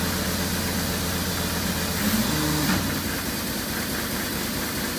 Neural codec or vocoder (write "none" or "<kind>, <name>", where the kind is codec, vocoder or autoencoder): none